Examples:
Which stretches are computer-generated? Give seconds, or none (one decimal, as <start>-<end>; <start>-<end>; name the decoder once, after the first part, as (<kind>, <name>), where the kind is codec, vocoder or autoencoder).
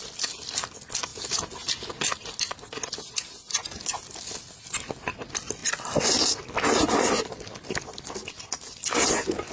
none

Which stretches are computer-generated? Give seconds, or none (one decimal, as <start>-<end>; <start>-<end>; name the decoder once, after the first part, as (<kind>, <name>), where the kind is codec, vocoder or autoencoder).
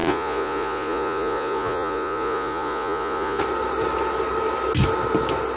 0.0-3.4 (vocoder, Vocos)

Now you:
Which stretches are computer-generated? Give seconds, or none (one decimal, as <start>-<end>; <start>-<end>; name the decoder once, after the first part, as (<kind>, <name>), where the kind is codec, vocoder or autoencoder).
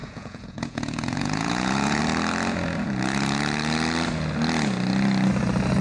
0.0-2.0 (vocoder, Vocos)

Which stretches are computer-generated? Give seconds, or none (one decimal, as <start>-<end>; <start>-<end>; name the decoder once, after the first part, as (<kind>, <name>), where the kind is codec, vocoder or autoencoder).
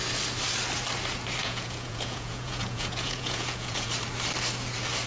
1.4-3.9 (vocoder, Vocos)